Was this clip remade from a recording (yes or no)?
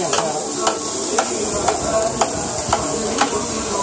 no